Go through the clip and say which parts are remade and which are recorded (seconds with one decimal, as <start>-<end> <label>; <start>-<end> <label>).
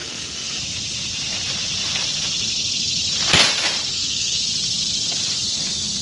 0.0-0.6 remade; 0.6-3.9 recorded; 3.9-4.4 remade; 4.4-6.0 recorded